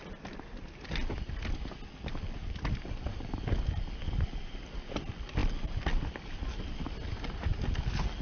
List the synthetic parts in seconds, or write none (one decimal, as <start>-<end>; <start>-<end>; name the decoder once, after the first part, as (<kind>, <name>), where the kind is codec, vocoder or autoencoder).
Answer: none